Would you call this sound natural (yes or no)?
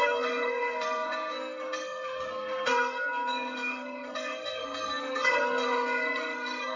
no